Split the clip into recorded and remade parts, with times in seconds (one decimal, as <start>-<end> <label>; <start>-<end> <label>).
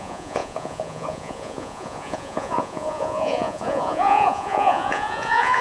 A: 0.0-5.6 remade